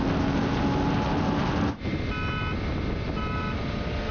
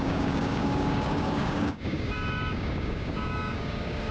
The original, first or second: first